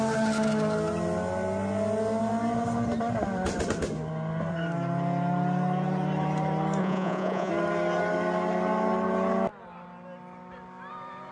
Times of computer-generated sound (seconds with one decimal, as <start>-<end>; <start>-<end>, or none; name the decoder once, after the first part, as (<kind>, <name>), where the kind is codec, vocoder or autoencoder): 6.8-7.5 (vocoder, Vocos)